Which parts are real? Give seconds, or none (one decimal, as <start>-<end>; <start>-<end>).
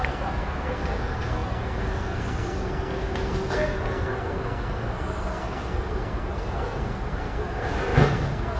none